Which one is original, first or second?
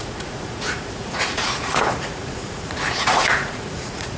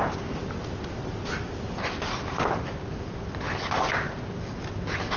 second